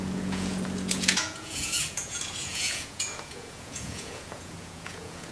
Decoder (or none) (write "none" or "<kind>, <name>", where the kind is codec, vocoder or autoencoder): vocoder, Vocos